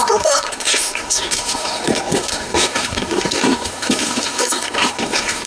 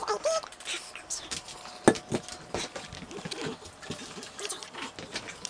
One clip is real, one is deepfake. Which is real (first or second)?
second